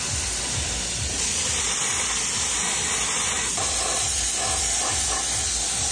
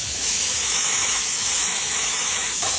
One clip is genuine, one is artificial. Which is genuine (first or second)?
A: first